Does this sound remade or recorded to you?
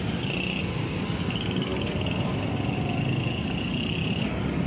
recorded